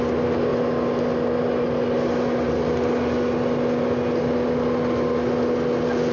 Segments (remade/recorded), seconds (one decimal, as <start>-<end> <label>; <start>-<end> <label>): 0.0-6.1 recorded